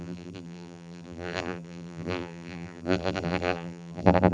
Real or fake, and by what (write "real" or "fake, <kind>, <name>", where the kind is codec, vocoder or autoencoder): fake, vocoder, BigVGAN v2